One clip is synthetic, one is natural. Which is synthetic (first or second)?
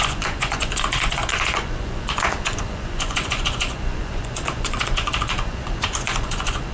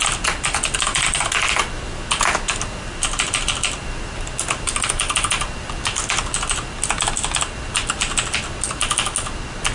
first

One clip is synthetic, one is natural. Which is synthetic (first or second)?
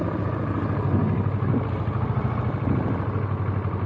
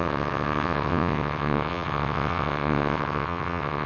second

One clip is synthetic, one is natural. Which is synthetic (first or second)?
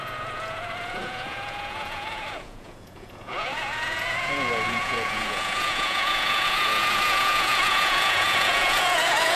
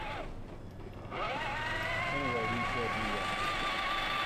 first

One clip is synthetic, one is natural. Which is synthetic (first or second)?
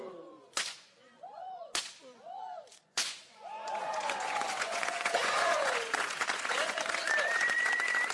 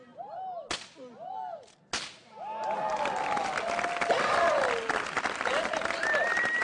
first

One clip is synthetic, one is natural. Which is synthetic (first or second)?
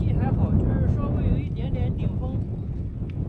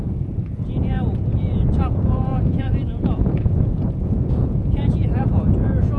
second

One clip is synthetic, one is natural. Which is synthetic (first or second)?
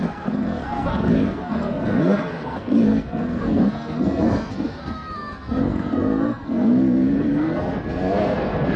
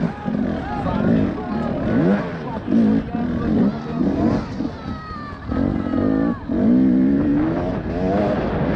first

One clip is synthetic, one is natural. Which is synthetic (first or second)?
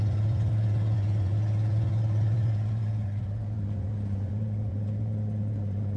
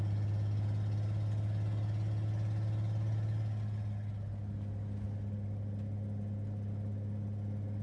first